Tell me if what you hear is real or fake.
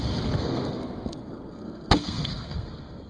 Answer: fake